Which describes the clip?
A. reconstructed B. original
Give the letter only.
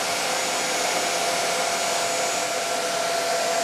B